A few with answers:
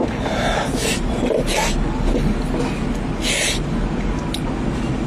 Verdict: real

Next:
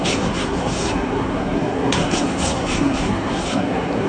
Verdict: fake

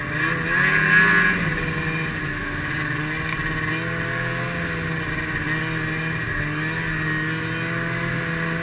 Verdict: real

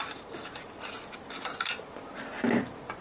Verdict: real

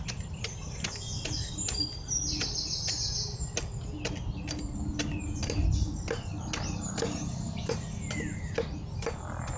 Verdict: real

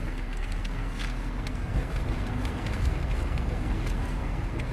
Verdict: fake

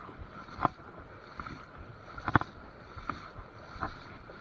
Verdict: real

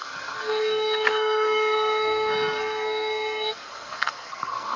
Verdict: fake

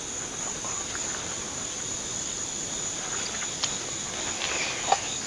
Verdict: real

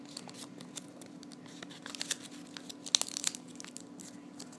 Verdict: real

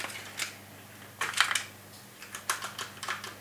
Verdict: real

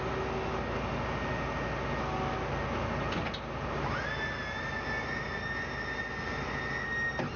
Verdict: real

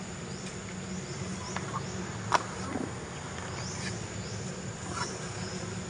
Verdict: real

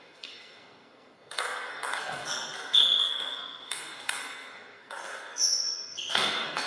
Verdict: fake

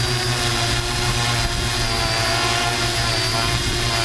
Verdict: real